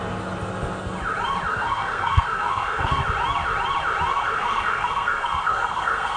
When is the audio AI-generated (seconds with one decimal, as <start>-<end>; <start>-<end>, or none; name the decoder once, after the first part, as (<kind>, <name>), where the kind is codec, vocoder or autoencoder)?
1.5-3.0 (codec, SNAC); 4.1-6.2

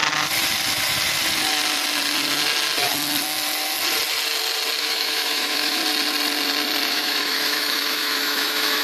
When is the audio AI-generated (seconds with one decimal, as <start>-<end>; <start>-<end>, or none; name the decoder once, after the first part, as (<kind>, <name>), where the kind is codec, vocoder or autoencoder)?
4.8-5.8 (autoencoder, DAC-VAE); 6.9-8.8

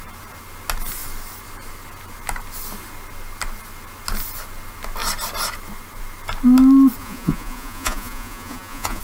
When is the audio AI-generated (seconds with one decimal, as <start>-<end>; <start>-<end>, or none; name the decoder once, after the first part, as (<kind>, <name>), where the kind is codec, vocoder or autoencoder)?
7.0-9.0 (vocoder, Vocos)

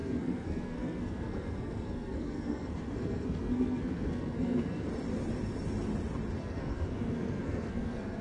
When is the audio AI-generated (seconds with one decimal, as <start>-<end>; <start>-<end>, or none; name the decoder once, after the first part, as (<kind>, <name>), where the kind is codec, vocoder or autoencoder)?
0.0-4.9 (codec, SNAC); 6.4-8.2